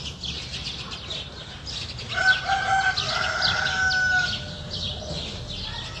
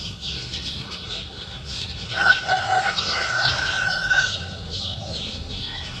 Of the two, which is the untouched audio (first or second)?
first